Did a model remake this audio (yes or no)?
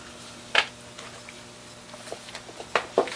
no